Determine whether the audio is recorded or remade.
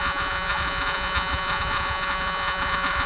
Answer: remade